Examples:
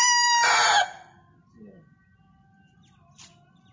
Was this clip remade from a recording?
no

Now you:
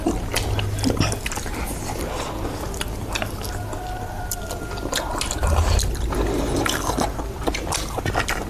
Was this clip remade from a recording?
no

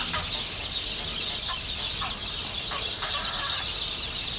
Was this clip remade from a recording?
no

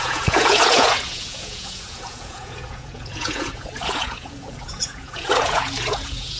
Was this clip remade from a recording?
yes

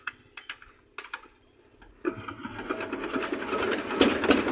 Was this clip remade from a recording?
no